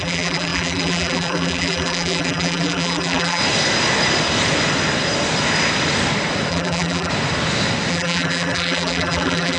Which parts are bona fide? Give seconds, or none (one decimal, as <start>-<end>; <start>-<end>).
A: 3.4-6.5; 7.1-7.9

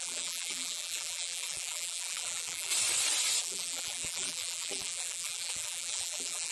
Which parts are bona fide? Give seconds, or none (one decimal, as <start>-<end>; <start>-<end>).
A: 2.7-3.4

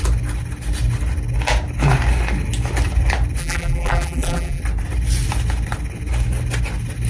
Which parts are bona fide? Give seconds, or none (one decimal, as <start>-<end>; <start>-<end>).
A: 0.0-3.4; 4.6-7.1

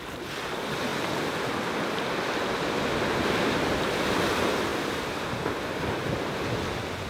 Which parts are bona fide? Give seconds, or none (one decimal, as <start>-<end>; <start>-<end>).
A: 0.0-4.7

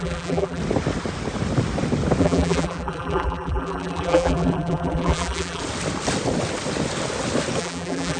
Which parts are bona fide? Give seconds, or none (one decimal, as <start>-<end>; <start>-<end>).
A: 0.6-2.2; 5.6-7.6

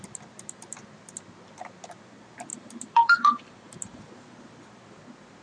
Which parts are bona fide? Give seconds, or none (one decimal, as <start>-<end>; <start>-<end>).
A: 0.0-2.5; 4.0-5.4

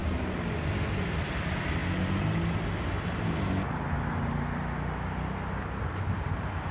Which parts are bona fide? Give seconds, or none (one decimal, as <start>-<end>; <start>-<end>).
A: 0.0-0.9; 1.8-5.8

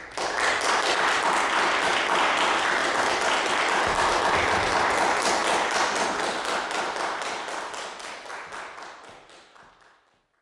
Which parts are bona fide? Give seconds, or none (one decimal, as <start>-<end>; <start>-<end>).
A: 0.0-2.8; 3.5-10.4